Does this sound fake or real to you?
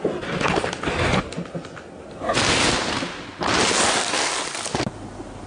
real